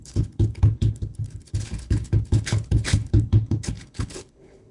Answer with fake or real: fake